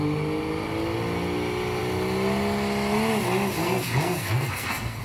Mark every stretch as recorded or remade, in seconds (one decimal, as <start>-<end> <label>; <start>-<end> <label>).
0.0-3.6 recorded; 3.6-5.0 remade